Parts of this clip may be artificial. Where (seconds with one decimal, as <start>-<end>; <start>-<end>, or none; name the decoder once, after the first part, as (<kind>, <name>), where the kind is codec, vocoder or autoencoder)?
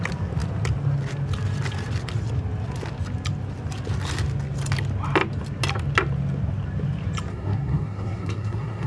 7.3-8.9 (codec, SNAC)